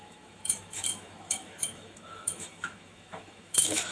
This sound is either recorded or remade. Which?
remade